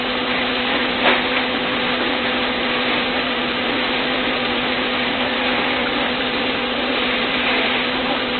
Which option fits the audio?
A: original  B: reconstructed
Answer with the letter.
B